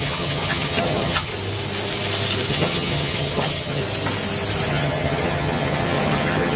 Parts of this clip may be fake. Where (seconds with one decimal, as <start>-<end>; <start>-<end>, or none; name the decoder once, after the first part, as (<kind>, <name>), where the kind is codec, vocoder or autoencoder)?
0.0-1.3 (vocoder, HiFi-GAN); 2.5-3.8; 4.7-6.6